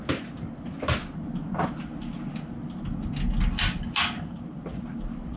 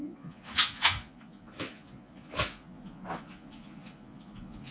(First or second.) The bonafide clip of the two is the first